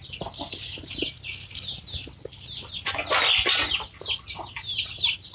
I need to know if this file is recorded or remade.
recorded